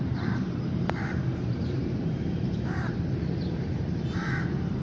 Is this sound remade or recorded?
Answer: remade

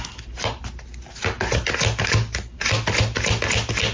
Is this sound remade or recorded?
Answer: recorded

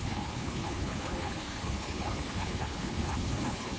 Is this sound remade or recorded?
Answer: remade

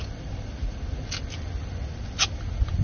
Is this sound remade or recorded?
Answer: recorded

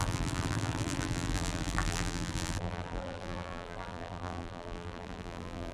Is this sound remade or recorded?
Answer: remade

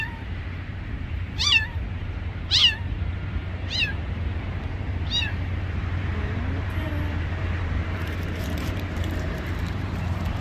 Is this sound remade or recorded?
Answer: remade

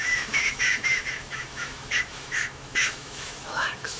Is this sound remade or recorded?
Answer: remade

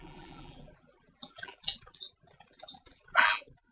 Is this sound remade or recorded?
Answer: remade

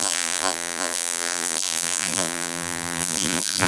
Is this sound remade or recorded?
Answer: remade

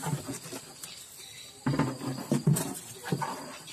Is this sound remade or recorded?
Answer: recorded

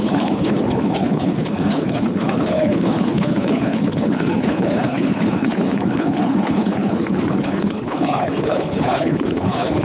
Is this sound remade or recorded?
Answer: remade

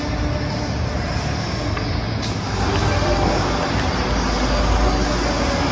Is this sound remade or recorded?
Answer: recorded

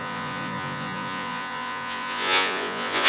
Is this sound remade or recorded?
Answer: remade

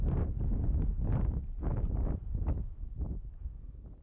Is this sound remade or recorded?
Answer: recorded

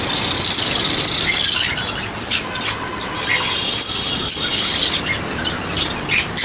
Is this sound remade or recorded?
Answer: recorded